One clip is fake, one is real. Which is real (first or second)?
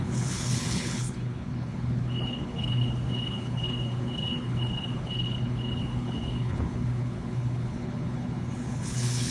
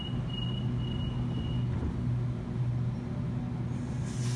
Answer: second